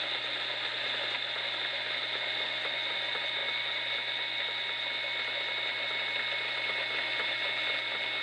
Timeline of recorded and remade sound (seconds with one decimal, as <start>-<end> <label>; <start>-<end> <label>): 0.0-8.2 recorded